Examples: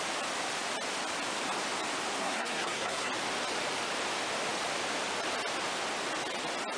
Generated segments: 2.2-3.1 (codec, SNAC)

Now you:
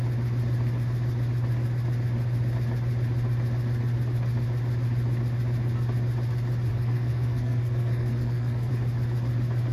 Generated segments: 6.7-8.7 (codec, SNAC)

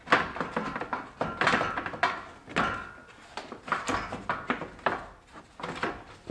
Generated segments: none

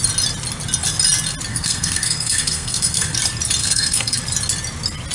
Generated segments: 1.5-3.2 (codec, SNAC); 3.6-4.2

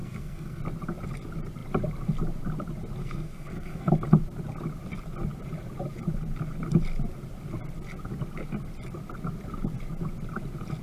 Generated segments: 0.0-0.6 (codec, SNAC); 3.0-3.9

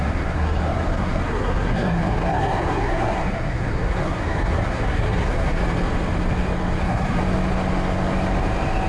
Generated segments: 0.0-5.6 (codec, SNAC); 6.8-7.2

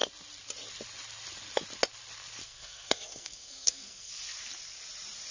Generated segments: 2.4-4.1 (codec, SNAC)

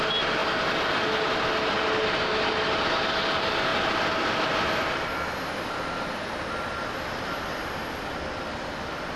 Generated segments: none